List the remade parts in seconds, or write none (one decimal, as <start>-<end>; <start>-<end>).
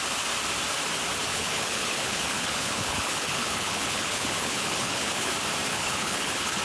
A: 1.3-5.3; 5.7-6.6